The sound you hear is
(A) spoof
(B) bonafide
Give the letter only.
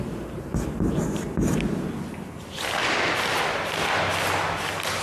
B